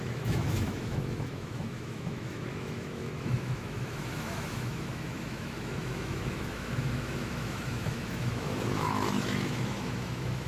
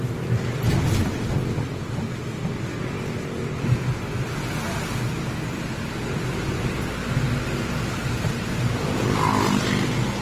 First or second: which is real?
second